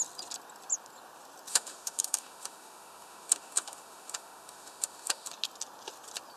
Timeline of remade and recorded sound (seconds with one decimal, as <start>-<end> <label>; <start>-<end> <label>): 0.0-1.5 recorded; 1.5-5.3 remade; 5.3-6.4 recorded